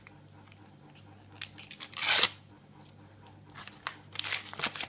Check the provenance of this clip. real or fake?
real